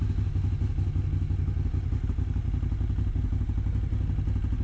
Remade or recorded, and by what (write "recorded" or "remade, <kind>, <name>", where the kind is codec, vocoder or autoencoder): recorded